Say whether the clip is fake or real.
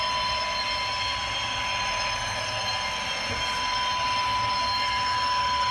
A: real